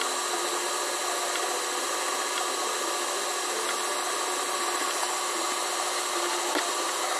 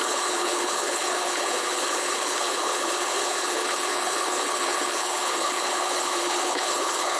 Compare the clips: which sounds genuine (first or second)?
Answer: first